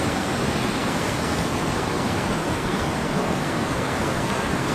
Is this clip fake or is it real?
fake